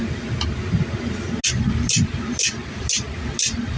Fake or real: real